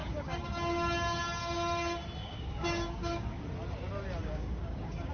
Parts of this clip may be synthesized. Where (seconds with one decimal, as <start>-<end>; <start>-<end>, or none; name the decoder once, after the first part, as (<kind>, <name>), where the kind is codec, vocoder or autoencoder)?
0.0-0.5 (codec, DAC); 2.2-3.4; 4.2-5.1